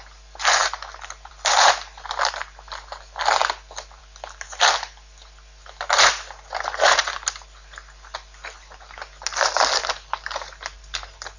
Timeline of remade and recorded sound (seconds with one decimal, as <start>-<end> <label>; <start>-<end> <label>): 0.0-11.4 recorded